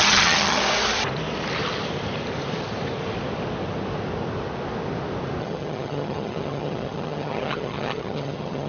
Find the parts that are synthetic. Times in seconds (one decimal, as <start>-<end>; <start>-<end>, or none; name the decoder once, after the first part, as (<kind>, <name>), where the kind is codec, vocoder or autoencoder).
0.0-0.6 (vocoder, HiFi-GAN); 5.4-8.7